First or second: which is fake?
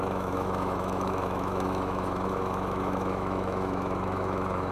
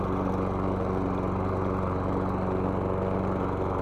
first